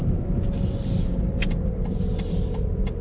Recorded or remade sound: recorded